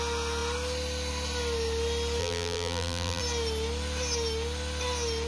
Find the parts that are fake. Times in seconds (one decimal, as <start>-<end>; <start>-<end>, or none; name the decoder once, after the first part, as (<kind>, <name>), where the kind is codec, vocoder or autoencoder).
2.2-3.2 (vocoder, BigVGAN v2)